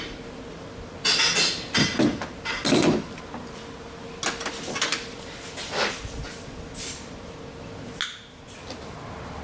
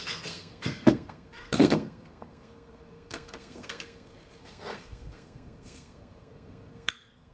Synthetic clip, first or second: second